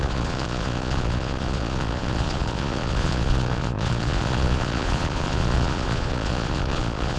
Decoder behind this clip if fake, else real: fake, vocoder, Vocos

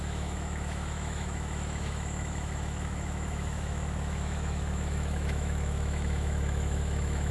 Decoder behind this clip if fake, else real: fake, autoencoder, DAC-VAE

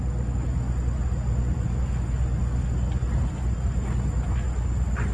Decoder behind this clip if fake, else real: real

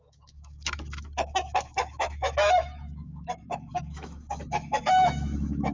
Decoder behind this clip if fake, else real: fake, autoencoder, DAC-VAE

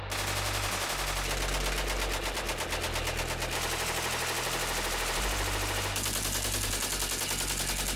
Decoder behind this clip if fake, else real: real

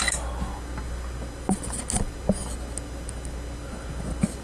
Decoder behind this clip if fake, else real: real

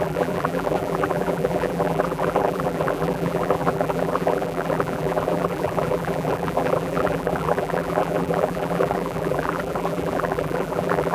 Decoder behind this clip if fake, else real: fake, vocoder, BigVGAN v2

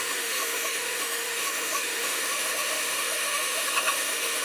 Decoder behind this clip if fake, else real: fake, autoencoder, DAC-VAE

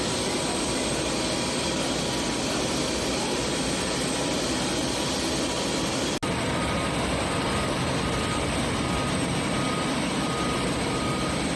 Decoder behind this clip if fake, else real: real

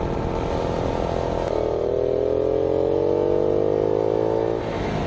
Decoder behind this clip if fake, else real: real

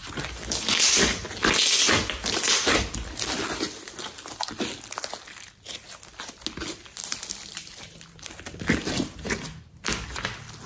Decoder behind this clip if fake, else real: real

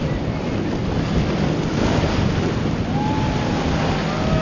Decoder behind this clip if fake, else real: real